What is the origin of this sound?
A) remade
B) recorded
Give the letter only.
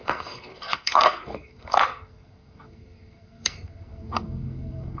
A